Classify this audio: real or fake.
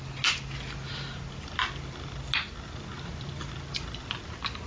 real